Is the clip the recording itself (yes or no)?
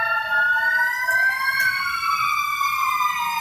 yes